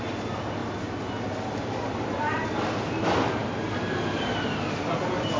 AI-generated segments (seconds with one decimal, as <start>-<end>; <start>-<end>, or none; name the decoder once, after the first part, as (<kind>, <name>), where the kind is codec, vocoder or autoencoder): none